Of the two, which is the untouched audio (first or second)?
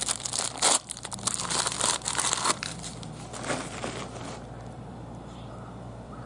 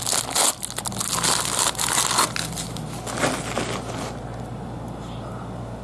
second